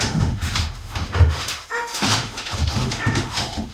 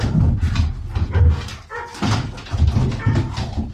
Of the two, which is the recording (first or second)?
second